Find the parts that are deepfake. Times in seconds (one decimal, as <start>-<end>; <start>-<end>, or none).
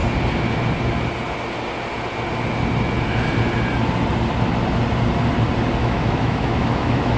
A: 5.8-7.2